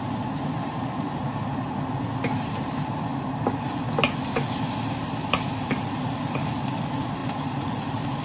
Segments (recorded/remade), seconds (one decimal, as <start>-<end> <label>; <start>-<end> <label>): 0.0-1.5 remade; 1.5-2.2 recorded; 2.2-3.1 remade; 3.1-4.7 recorded; 4.7-8.2 remade